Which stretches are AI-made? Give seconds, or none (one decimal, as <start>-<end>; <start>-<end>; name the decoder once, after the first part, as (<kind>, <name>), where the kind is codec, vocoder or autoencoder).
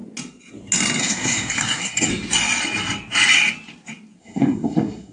1.0-2.1 (codec, SNAC); 4.2-5.1